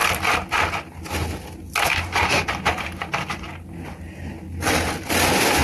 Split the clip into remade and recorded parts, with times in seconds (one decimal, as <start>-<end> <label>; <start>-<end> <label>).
0.0-5.6 recorded